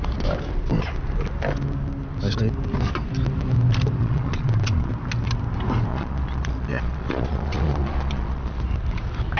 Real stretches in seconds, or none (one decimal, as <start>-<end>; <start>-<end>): 0.0-4.0; 4.9-5.9; 8.6-9.4